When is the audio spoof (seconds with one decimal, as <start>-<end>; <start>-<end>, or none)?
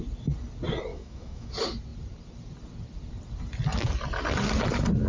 0.9-1.5